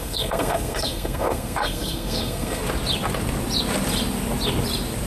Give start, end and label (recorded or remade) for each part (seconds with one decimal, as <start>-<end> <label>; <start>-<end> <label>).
0.0-2.6 remade; 2.6-5.1 recorded